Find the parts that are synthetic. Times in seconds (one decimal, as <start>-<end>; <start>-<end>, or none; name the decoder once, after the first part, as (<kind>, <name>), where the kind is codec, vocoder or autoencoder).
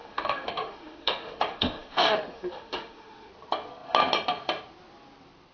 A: 0.0-3.3 (autoencoder, DAC-VAE)